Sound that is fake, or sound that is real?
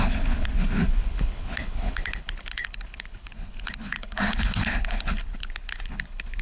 fake